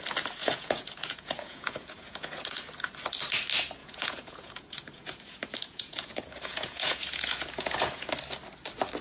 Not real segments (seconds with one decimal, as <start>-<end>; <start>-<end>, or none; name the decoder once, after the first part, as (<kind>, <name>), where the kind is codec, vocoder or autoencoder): 0.4-2.6 (vocoder, Vocos); 3.8-8.1

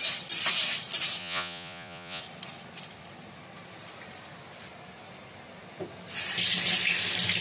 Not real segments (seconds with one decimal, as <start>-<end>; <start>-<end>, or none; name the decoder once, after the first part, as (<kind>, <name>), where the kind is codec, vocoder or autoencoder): 1.2-2.2 (vocoder, Vocos)